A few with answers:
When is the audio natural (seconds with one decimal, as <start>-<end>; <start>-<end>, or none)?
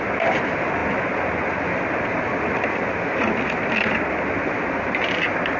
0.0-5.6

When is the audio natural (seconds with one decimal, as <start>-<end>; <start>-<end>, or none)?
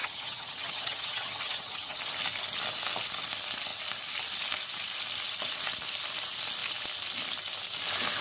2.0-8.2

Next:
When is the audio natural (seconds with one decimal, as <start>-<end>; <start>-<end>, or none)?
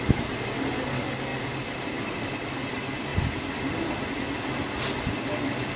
0.0-5.8